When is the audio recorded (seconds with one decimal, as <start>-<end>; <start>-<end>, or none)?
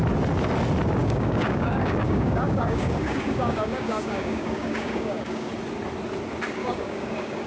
0.0-1.0; 5.5-6.6